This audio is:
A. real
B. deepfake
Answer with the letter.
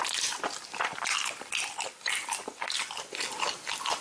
A